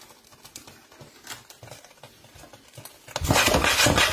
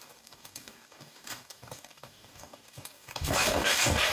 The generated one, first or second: second